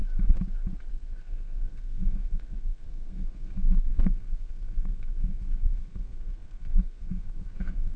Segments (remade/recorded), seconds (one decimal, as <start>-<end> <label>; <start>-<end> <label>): 0.0-0.9 recorded; 0.9-8.0 remade